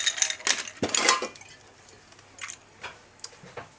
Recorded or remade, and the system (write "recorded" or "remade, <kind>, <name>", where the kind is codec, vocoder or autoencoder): recorded